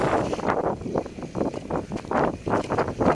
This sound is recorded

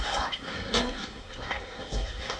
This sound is remade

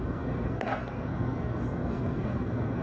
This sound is remade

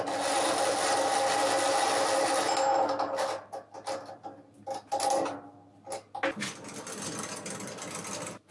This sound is recorded